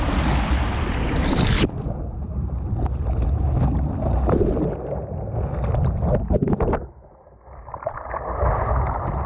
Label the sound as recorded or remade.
recorded